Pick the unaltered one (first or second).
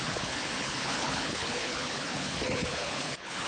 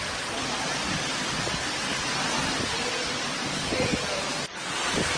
second